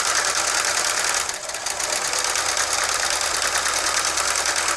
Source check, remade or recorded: recorded